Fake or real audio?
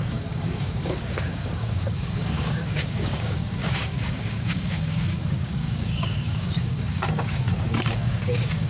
fake